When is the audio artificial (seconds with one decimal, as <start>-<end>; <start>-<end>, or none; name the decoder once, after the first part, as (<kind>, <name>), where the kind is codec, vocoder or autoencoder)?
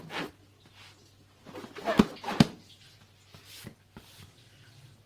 none